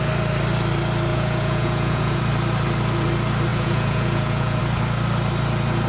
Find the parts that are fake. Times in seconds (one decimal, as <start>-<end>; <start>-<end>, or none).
1.1-2.2; 3.5-4.6